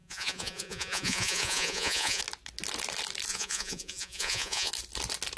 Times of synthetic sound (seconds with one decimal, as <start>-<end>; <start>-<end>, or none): 0.0-2.2; 3.3-4.7